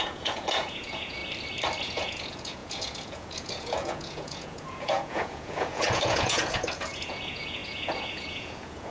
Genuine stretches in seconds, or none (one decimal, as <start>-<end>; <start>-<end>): 1.2-1.8